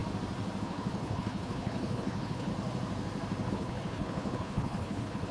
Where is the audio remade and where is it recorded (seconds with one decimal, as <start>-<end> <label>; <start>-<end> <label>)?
0.0-0.6 recorded; 0.6-2.5 remade; 2.5-3.5 recorded; 3.5-5.3 remade